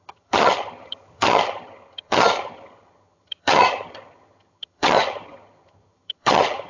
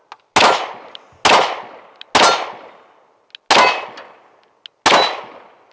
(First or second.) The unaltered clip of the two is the second